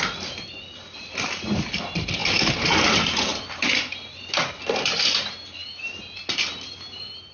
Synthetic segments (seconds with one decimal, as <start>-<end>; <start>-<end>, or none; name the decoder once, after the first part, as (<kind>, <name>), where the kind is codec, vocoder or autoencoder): none